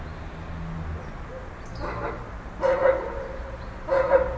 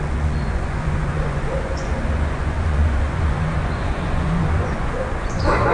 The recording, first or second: first